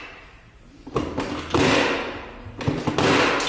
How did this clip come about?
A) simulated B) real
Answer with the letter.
B